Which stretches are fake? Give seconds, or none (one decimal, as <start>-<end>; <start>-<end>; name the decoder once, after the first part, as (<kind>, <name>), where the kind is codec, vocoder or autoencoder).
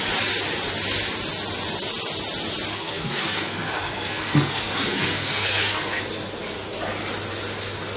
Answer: 2.7-6.0 (codec, SNAC)